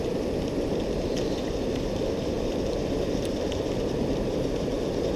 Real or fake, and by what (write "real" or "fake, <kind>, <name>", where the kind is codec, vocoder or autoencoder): fake, vocoder, BigVGAN v2